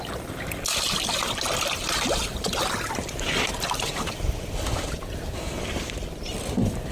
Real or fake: fake